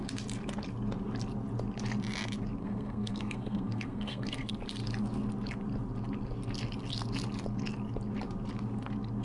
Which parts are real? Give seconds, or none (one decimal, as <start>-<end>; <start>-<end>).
0.0-2.6; 4.5-9.2